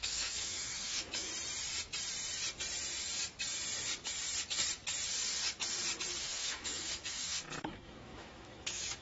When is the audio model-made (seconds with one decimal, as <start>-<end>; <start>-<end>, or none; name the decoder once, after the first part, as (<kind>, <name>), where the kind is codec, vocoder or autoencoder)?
0.0-1.3 (autoencoder, DAC-VAE); 6.2-9.0